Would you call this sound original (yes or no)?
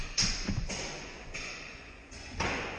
no